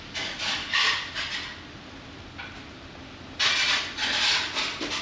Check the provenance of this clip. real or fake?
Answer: real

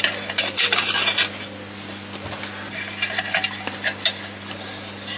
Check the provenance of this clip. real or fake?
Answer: real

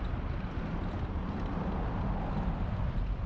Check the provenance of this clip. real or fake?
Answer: real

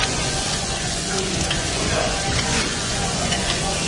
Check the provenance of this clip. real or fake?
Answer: fake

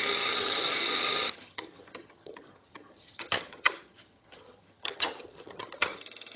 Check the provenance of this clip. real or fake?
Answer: fake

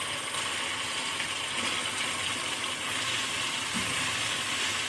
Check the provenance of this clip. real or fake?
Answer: real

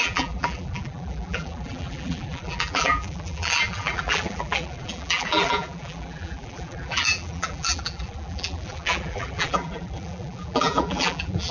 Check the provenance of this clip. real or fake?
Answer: fake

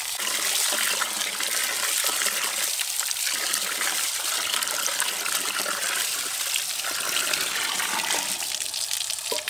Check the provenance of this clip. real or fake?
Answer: real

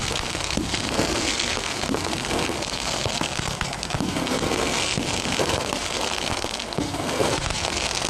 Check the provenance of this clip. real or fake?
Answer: fake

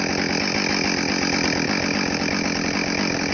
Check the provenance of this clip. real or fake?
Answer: real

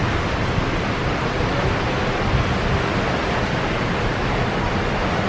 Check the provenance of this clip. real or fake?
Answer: real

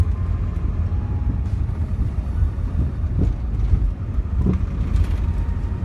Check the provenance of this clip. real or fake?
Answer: fake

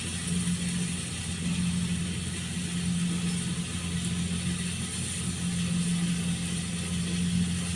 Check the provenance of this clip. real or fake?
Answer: real